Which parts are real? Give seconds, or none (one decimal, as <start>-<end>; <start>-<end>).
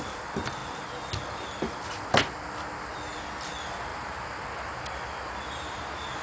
0.0-6.2